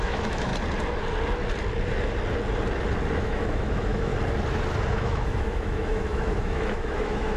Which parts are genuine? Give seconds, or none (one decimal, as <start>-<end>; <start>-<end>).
0.5-3.2; 4.1-4.9